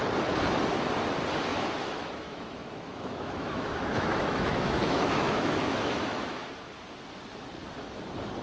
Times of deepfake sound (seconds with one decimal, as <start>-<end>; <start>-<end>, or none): 1.5-6.5